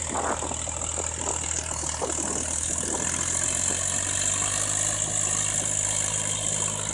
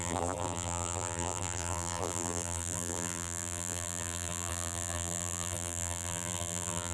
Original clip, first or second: first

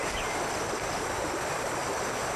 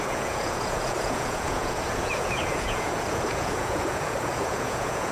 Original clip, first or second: first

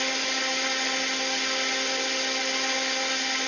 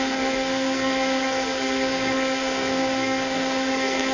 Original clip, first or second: first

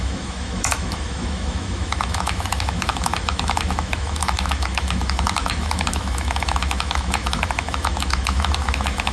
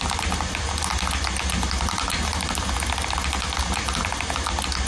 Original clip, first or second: second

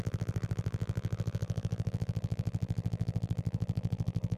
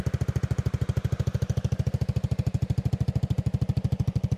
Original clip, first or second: second